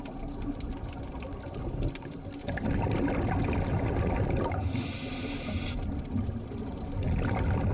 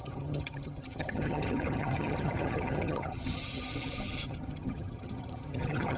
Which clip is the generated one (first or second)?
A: second